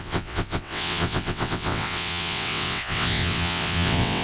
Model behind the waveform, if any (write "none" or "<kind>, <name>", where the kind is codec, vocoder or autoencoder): vocoder, WaveNeXt